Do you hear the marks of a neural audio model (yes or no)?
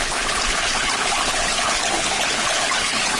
yes